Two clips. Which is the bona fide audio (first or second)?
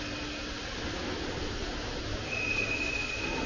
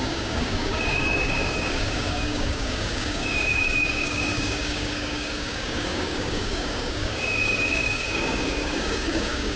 first